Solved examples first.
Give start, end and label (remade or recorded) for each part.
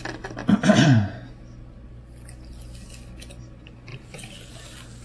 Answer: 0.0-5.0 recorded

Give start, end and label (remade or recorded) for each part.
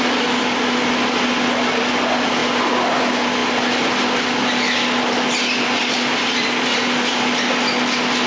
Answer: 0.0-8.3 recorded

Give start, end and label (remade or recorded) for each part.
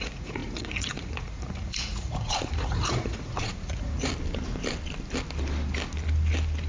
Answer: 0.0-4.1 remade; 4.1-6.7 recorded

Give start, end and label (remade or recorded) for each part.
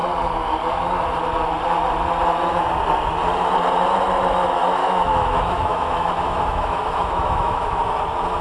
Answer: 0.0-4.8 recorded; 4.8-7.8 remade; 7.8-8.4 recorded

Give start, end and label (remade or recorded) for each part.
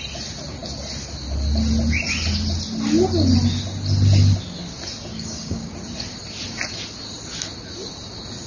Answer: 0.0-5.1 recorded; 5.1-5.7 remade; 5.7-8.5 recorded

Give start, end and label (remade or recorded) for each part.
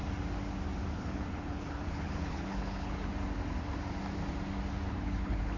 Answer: 0.0-0.9 recorded; 0.9-3.1 remade; 3.1-4.9 recorded; 4.9-5.6 remade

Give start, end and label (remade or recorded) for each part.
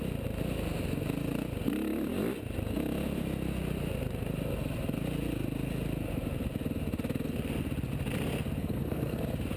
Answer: 0.0-8.6 recorded; 8.6-9.2 remade; 9.2-9.6 recorded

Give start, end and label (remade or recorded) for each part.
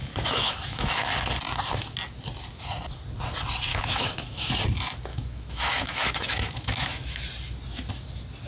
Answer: 0.0-1.0 remade; 1.0-3.7 recorded; 3.7-4.5 remade; 4.5-5.1 recorded; 5.1-7.2 remade; 7.2-8.5 recorded